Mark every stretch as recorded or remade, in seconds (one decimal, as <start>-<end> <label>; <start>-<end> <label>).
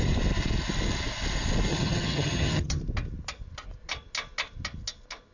0.0-1.7 recorded; 1.7-2.8 remade; 2.8-5.3 recorded